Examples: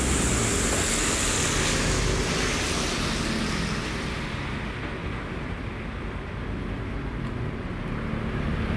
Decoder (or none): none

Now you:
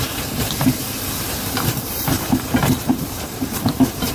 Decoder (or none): vocoder, BigVGAN v2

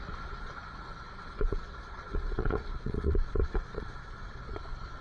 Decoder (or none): vocoder, Vocos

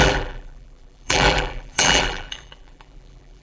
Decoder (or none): vocoder, BigVGAN v2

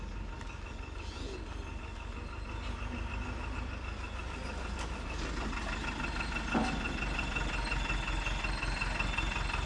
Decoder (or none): none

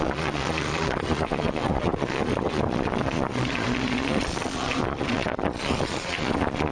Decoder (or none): vocoder, Vocos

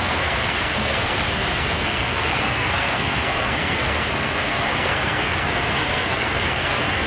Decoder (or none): codec, SNAC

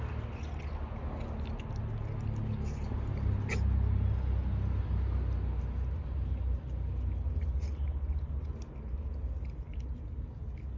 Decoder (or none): none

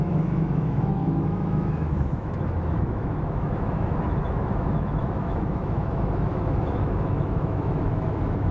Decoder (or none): autoencoder, DAC-VAE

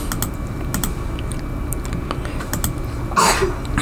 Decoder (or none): none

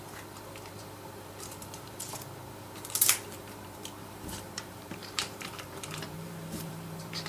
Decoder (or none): vocoder, BigVGAN v2